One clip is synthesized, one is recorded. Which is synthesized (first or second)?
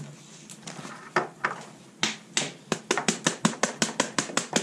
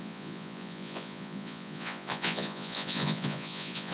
second